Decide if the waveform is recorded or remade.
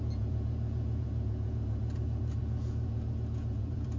remade